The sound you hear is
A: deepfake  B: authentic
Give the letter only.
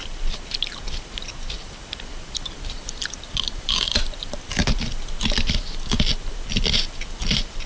A